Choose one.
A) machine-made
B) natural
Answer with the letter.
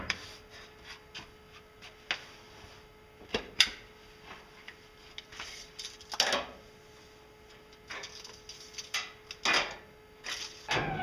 B